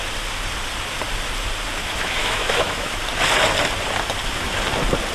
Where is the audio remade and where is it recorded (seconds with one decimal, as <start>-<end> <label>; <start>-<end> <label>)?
0.0-1.8 recorded; 1.8-3.0 remade; 3.0-5.1 recorded